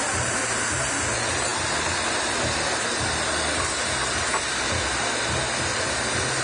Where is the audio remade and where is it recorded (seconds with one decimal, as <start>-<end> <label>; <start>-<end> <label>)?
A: 0.0-6.4 recorded